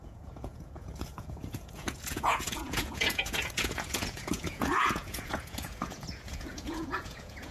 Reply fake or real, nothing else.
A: fake